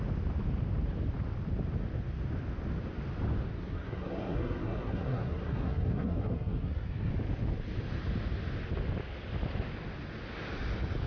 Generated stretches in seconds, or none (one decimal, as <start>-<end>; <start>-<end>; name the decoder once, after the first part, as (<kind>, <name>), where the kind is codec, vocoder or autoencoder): 3.5-7.1 (codec, SNAC)